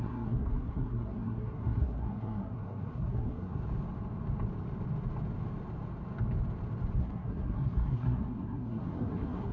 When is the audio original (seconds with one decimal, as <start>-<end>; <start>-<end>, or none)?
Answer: 3.6-7.0